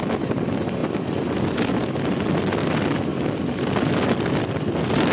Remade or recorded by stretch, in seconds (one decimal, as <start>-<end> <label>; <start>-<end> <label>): 0.0-5.1 recorded